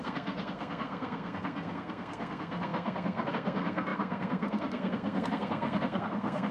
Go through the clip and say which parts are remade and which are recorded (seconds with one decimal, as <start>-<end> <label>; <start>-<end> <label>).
0.0-6.5 remade